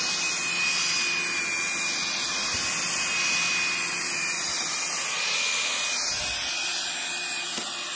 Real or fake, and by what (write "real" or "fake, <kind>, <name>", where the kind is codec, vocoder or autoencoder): real